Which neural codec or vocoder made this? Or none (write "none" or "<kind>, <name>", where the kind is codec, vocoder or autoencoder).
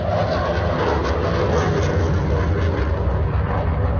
none